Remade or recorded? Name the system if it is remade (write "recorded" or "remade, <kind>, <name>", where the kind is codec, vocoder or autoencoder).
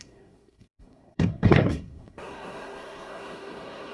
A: remade, codec, SNAC